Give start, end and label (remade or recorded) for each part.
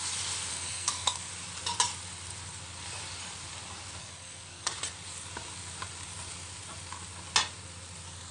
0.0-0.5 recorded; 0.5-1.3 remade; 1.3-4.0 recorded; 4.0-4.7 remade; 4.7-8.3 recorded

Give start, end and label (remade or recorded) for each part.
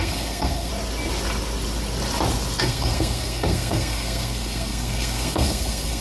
0.0-0.7 remade; 0.7-2.6 recorded; 2.6-6.0 remade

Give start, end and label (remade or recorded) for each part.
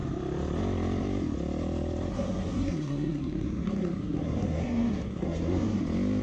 0.0-2.1 recorded; 2.1-5.8 remade; 5.8-6.2 recorded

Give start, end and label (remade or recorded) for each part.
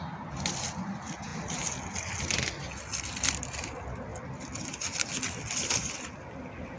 0.0-6.8 recorded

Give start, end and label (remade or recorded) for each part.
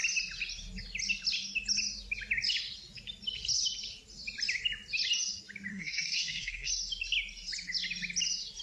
0.0-5.7 recorded; 5.7-6.7 remade; 6.7-8.6 recorded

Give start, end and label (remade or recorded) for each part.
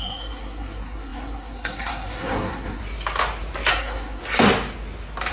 0.0-2.8 remade; 2.8-3.7 recorded; 3.7-4.2 remade; 4.2-5.3 recorded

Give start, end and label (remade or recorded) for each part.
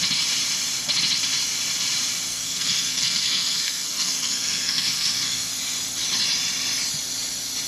0.0-2.3 recorded; 2.3-5.5 remade; 5.5-7.7 recorded